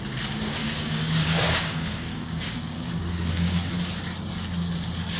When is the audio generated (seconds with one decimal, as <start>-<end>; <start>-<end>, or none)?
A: 0.6-3.7